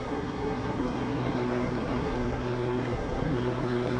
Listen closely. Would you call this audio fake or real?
fake